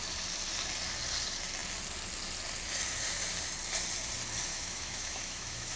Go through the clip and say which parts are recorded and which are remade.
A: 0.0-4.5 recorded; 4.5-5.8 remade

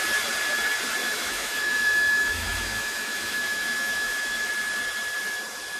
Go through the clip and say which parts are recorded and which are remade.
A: 0.0-1.0 recorded; 1.0-4.5 remade; 4.5-5.8 recorded